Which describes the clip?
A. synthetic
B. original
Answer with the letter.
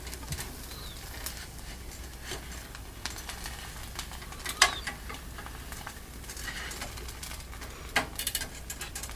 B